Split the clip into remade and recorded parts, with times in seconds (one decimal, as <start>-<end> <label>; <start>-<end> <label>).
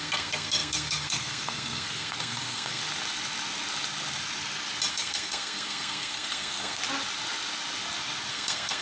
0.0-2.8 remade; 2.8-4.9 recorded; 4.9-6.8 remade; 6.8-8.3 recorded; 8.3-8.8 remade